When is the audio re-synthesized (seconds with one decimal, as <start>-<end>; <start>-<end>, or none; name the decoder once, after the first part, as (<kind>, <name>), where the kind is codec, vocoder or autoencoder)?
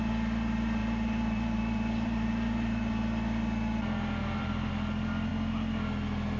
0.8-2.9 (vocoder, BigVGAN v2); 4.2-4.7